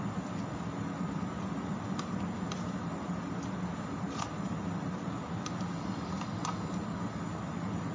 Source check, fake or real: real